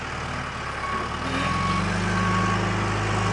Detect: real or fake real